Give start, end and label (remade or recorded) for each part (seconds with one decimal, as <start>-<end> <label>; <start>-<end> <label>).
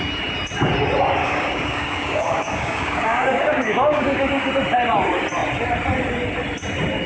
0.0-1.2 recorded; 1.2-4.5 remade; 4.5-7.1 recorded